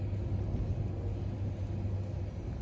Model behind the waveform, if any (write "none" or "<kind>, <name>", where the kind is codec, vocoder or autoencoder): none